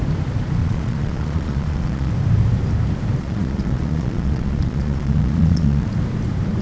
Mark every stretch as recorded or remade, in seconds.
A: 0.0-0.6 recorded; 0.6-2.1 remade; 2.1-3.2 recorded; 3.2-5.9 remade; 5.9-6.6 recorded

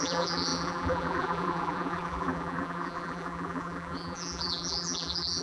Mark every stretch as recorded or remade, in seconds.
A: 0.0-5.4 remade

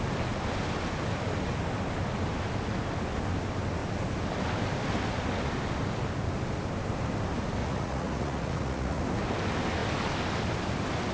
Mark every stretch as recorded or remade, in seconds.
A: 0.0-7.6 recorded; 7.6-9.0 remade; 9.0-11.1 recorded

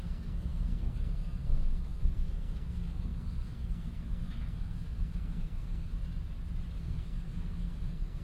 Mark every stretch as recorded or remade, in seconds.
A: 0.0-5.9 remade; 5.9-6.8 recorded; 6.8-8.2 remade

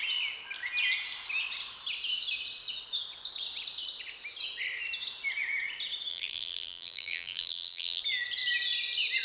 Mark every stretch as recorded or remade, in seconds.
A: 0.0-6.1 recorded; 6.1-8.0 remade; 8.0-9.2 recorded

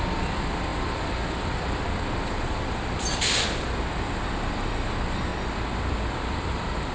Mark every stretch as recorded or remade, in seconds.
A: 0.0-5.3 remade; 5.3-6.1 recorded; 6.1-6.9 remade

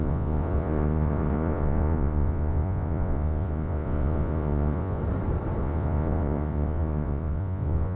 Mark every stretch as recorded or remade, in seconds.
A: 0.0-5.0 remade; 5.0-5.6 recorded; 5.6-8.0 remade